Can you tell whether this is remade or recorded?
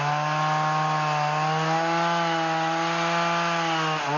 recorded